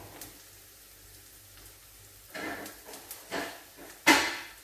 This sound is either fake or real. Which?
real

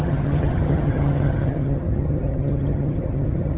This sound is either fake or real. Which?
fake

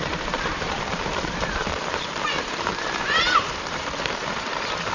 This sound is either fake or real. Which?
fake